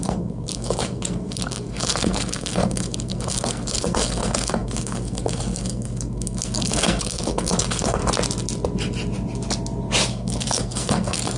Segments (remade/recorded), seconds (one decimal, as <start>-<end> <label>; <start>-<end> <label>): 0.0-8.0 remade; 8.0-10.1 recorded; 10.1-11.4 remade